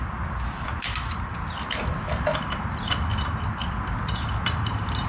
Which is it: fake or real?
real